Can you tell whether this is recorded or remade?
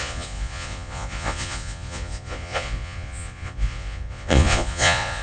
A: remade